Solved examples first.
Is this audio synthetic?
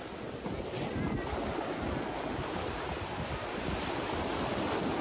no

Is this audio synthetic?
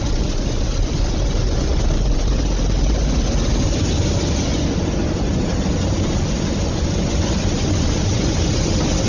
yes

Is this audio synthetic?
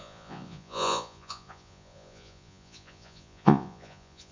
yes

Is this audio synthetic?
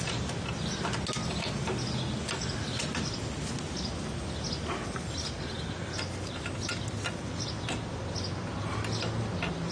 no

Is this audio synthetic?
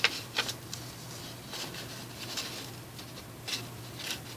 no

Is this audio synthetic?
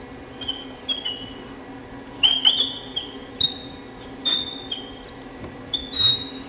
no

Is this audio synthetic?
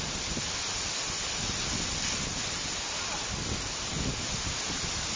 no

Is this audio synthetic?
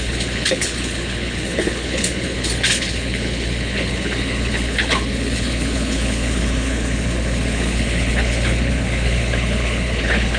yes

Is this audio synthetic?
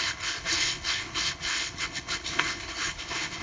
yes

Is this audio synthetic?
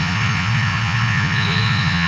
yes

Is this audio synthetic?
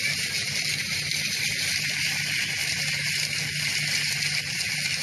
no